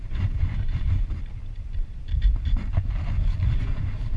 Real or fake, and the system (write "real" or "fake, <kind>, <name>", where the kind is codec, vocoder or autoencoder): real